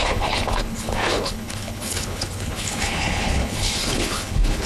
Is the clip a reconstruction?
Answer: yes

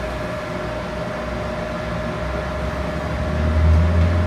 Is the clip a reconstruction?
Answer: no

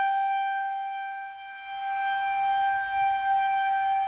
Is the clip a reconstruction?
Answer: no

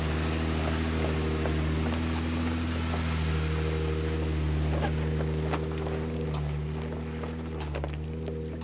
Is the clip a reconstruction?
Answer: no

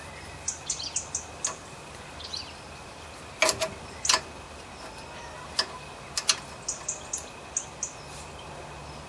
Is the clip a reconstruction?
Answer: no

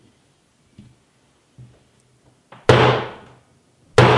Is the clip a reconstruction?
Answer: no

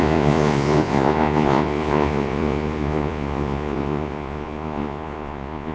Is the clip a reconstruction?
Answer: yes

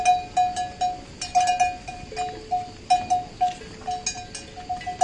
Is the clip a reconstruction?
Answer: no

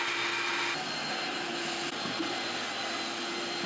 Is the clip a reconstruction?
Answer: no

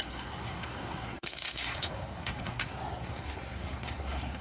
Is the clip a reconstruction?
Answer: yes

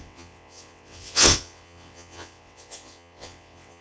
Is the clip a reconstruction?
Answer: yes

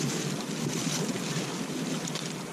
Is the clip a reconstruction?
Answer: yes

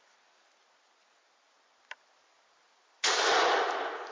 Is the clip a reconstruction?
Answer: no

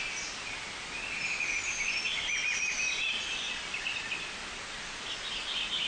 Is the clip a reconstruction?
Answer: no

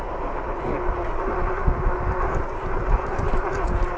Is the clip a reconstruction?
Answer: no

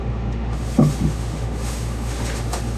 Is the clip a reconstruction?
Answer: yes